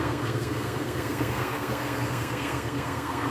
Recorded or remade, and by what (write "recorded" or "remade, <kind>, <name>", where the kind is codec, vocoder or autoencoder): remade, codec, SNAC